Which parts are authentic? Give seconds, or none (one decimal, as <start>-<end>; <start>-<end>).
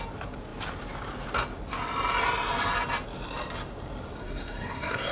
0.0-4.2